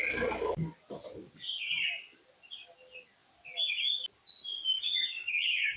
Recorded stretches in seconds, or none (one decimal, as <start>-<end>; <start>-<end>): 0.0-4.5